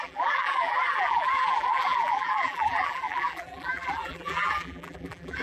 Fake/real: fake